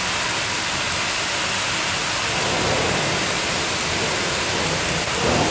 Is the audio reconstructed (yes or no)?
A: no